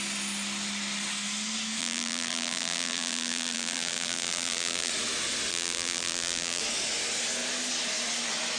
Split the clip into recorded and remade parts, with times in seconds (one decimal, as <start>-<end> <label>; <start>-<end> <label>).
0.0-1.8 recorded; 1.8-4.9 remade; 4.9-5.5 recorded; 5.5-6.6 remade; 6.6-8.6 recorded